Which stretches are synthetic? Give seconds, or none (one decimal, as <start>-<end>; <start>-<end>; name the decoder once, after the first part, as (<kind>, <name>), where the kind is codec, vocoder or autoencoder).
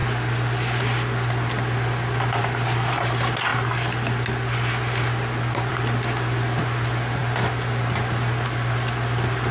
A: none